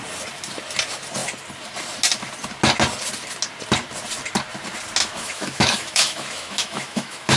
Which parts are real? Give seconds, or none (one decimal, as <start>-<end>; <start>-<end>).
0.0-5.0